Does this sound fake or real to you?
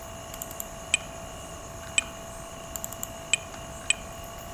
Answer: real